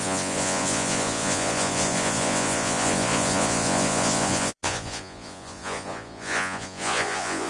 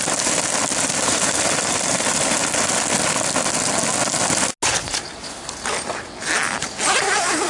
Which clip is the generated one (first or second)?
first